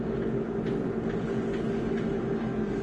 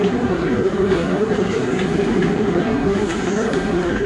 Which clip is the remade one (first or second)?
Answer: second